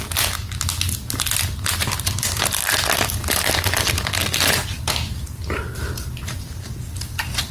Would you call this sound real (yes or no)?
yes